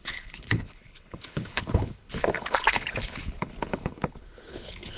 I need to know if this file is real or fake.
fake